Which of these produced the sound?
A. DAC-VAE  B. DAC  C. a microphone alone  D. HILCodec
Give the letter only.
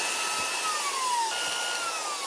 C